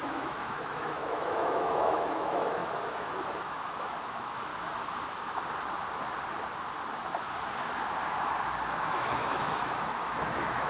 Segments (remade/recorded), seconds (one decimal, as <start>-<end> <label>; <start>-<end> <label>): 0.0-4.5 remade; 4.5-8.7 recorded; 8.7-10.7 remade